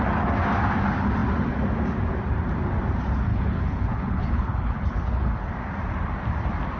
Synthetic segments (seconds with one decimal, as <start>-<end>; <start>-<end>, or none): 3.3-5.5